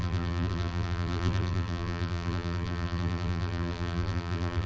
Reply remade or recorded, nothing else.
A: remade